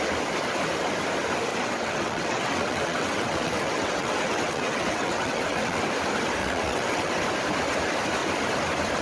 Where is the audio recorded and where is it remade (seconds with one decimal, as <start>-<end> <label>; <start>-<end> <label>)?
0.0-1.5 recorded; 1.5-5.8 remade; 5.8-6.4 recorded; 6.4-7.1 remade; 7.1-9.0 recorded